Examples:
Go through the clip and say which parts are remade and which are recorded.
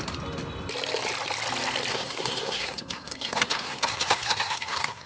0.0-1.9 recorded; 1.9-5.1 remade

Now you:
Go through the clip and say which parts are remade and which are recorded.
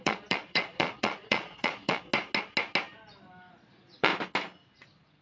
0.0-2.1 remade; 2.1-3.5 recorded; 3.5-4.1 remade; 4.1-4.8 recorded; 4.8-5.2 remade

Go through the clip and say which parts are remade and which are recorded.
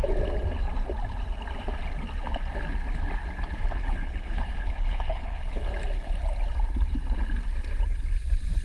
0.0-3.8 recorded; 3.8-5.6 remade; 5.6-8.6 recorded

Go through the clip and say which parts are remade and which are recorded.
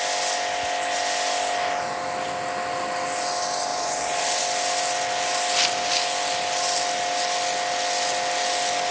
0.0-3.7 recorded; 3.7-4.4 remade; 4.4-8.9 recorded